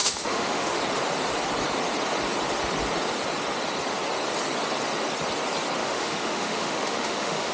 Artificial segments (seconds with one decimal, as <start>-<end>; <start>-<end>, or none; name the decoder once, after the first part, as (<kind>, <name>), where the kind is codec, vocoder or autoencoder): 0.0-0.8 (autoencoder, DAC-VAE); 5.8-7.5